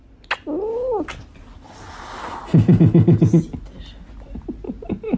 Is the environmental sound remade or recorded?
recorded